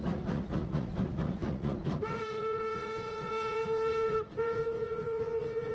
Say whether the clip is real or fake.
fake